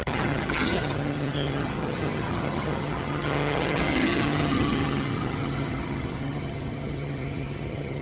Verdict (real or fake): fake